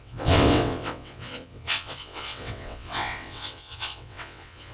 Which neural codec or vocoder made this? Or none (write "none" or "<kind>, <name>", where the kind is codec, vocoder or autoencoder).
vocoder, WaveNeXt